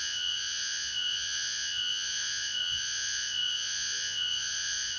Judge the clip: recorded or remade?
remade